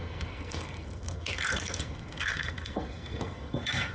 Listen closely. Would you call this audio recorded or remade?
remade